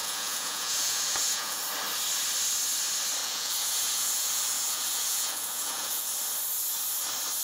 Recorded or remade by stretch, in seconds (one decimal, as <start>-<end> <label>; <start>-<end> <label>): 0.0-1.6 remade; 1.6-3.2 recorded; 3.2-6.1 remade; 6.1-7.4 recorded